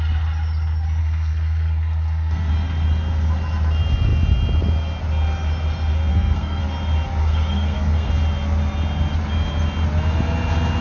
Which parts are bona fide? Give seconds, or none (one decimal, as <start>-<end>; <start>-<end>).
0.0-1.0; 2.5-6.1; 6.6-7.2; 8.1-10.8